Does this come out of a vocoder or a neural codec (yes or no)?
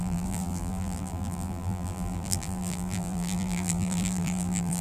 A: yes